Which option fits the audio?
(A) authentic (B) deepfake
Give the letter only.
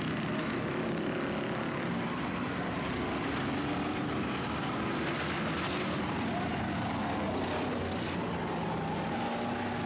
A